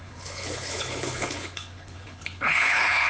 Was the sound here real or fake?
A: fake